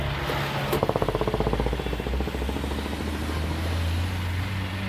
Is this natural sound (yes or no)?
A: yes